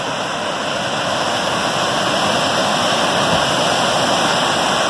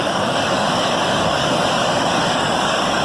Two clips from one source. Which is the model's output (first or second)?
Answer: second